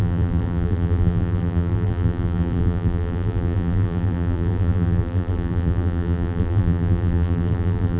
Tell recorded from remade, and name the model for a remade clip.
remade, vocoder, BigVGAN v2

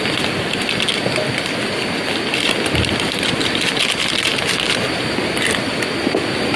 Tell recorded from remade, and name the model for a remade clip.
recorded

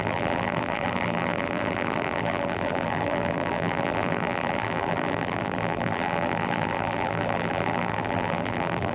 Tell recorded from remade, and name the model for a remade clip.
remade, vocoder, BigVGAN v2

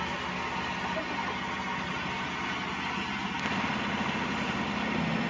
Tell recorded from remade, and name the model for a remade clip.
recorded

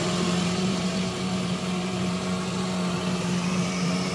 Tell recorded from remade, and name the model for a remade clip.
remade, vocoder, BigVGAN v2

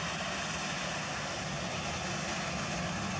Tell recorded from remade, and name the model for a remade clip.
recorded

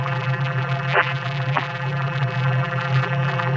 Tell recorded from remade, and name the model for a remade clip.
remade, vocoder, BigVGAN v2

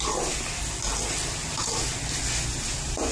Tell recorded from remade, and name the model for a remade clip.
recorded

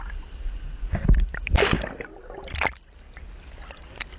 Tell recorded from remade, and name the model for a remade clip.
recorded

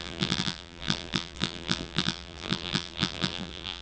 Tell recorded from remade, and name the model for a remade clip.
remade, vocoder, BigVGAN v2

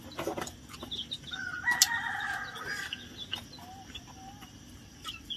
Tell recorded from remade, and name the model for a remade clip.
recorded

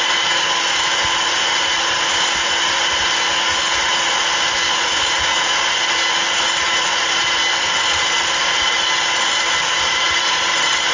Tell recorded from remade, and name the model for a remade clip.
recorded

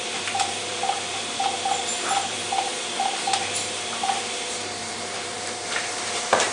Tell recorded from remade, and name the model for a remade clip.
remade, vocoder, BigVGAN v2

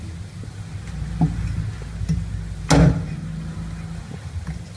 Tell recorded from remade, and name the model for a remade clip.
recorded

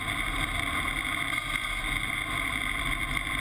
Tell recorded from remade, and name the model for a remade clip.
remade, vocoder, BigVGAN v2